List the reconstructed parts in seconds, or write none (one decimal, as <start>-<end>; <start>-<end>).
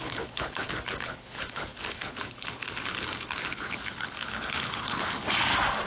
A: 0.0-5.2